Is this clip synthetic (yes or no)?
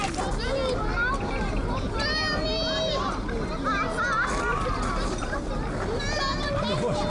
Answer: no